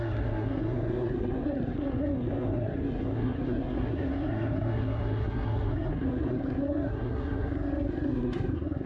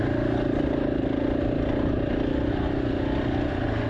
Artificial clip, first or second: first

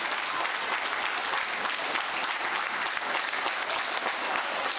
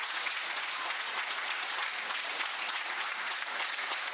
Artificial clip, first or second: second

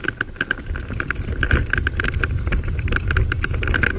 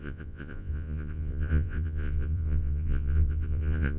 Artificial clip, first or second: second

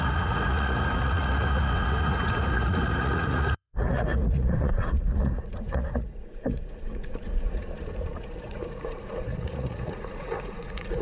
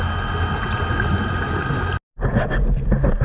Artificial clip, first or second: first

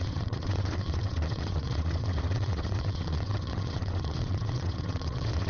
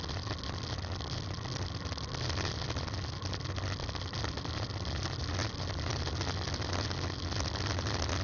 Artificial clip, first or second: first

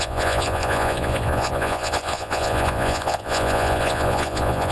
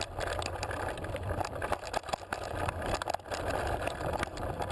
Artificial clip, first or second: first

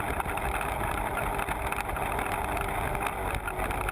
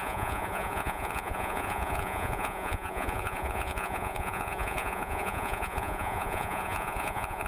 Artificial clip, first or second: second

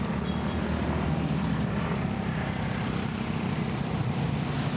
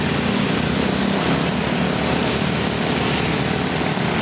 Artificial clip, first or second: first